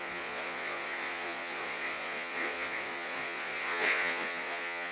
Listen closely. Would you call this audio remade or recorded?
remade